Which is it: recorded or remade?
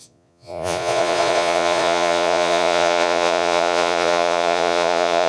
remade